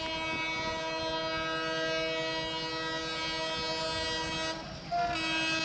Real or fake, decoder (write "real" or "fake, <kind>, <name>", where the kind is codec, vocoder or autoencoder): real